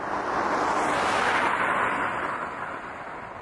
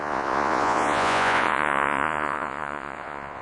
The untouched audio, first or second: first